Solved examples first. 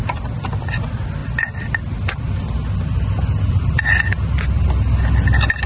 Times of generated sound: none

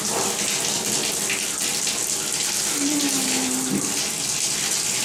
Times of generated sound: none

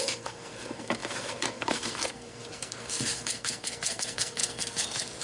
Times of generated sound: 0.0-5.2 (codec, SNAC)

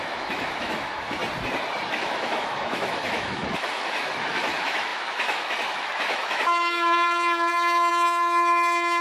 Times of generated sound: 0.0-1.2 (autoencoder, DAC-VAE); 1.9-9.0

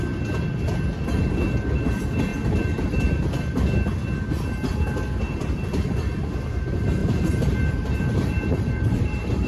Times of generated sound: 2.3-3.6 (vocoder, BigVGAN v2); 7.0-9.5

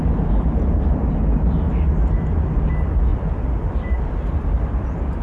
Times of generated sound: 3.1-5.2 (vocoder, BigVGAN v2)

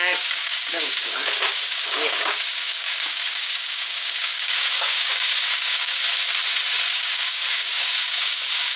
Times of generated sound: 0.0-6.0 (codec, DAC); 6.9-8.8